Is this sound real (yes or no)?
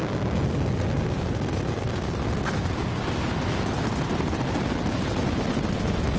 yes